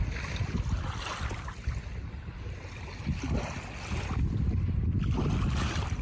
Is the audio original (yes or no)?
yes